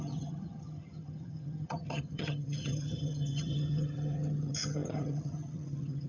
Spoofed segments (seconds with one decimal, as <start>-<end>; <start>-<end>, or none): 0.0-6.1